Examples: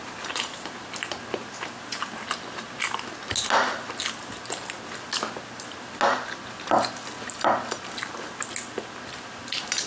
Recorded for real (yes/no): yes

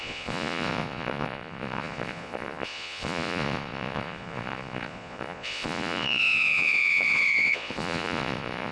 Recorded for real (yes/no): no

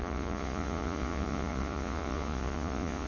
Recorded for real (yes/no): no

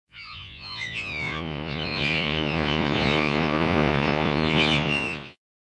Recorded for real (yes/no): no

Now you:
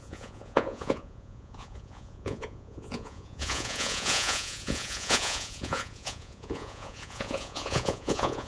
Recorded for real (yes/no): no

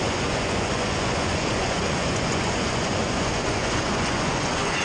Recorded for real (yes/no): no